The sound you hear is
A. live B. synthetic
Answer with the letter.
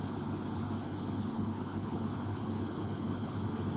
B